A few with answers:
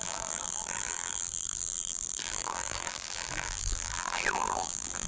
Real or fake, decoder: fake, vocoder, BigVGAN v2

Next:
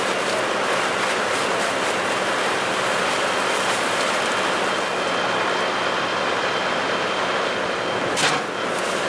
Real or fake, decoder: real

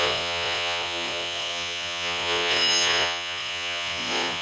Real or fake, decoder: fake, vocoder, Vocos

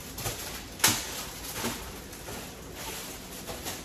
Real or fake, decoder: real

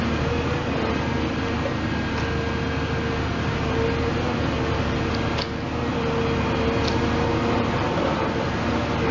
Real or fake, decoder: real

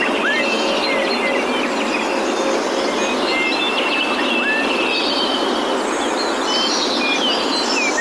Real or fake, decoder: real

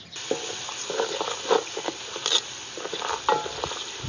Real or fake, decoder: real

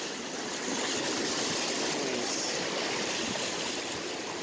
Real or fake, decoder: real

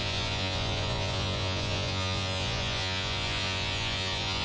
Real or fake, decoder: fake, vocoder, Vocos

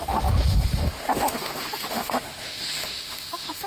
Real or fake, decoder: fake, autoencoder, DAC-VAE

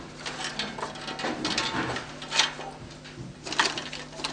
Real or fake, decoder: real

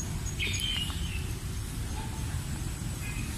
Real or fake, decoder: fake, vocoder, BigVGAN v2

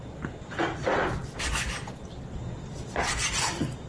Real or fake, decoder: real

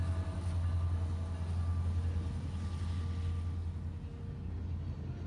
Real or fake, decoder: real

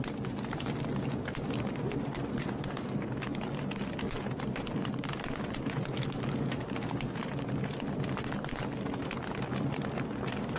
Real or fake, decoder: real